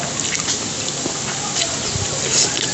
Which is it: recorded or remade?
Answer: recorded